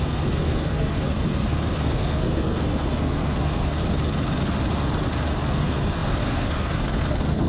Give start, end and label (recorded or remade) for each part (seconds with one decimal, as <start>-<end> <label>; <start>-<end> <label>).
0.0-3.8 remade; 3.8-5.5 recorded; 5.5-7.5 remade